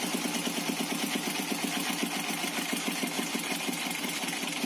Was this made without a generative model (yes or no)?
yes